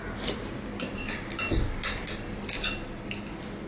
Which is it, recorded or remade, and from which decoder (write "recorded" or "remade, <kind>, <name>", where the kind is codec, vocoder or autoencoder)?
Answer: recorded